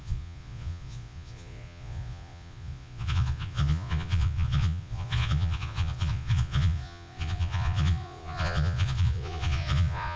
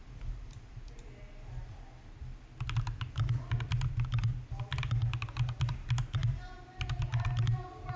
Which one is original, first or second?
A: second